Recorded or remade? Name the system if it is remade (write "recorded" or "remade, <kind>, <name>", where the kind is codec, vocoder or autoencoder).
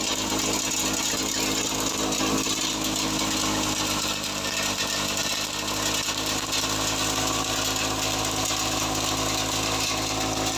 recorded